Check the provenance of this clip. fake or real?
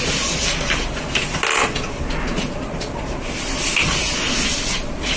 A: real